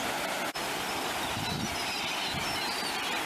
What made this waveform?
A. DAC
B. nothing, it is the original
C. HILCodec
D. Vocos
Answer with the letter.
B